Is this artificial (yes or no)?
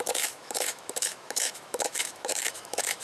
yes